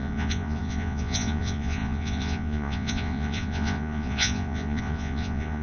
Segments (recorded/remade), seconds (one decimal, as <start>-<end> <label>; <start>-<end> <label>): 0.0-5.6 remade